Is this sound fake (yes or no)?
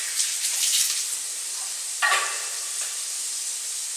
no